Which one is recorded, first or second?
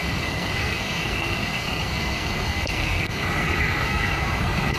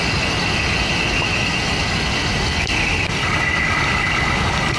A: second